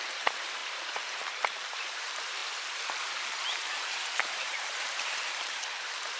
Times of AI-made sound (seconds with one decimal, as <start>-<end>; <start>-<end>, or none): 0.0-2.4; 3.3-6.2